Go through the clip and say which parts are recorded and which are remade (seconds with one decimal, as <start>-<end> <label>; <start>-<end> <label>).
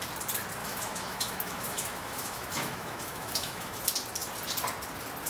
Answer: 0.0-0.6 recorded; 0.6-3.8 remade; 3.8-5.3 recorded